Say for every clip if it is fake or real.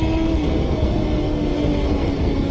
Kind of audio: fake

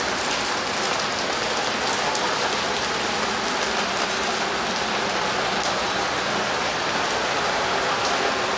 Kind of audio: real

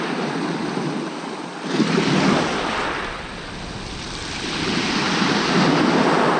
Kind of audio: real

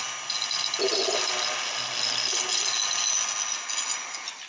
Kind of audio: real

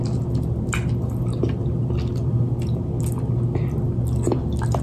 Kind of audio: real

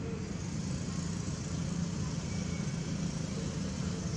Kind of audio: real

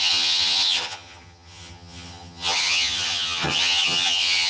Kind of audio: fake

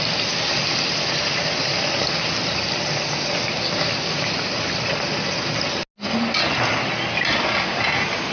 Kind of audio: real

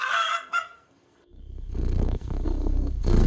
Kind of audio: fake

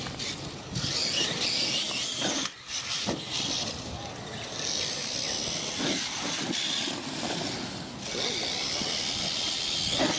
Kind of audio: real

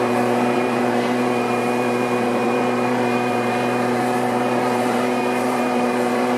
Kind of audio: fake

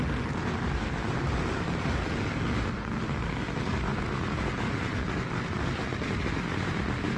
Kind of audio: real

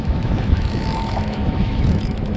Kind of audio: fake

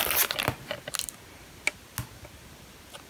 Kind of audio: real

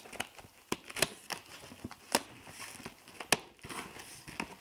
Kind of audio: real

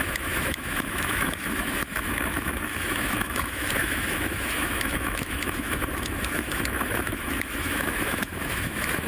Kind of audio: fake